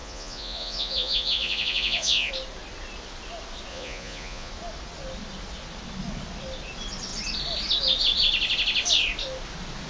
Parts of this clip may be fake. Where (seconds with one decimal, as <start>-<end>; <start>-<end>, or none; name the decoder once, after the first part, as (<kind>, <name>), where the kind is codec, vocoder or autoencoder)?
0.0-2.3 (vocoder, Vocos); 3.7-4.5